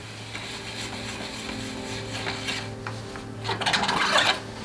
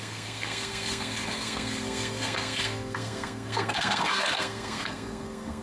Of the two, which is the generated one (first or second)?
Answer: second